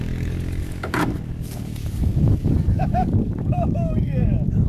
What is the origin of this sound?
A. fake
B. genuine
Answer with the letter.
A